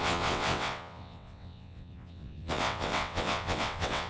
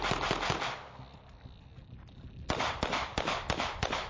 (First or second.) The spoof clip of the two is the first